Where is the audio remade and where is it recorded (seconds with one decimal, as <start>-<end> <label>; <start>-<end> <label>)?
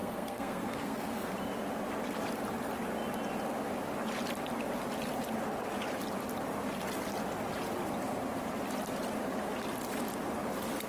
0.0-1.3 remade; 1.3-10.9 recorded